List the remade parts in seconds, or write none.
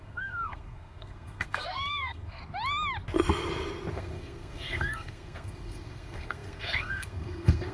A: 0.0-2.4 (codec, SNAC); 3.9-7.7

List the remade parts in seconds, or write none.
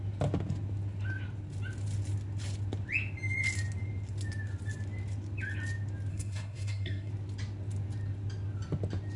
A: 6.1-7.1 (codec, SNAC)